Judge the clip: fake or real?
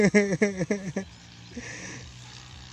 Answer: real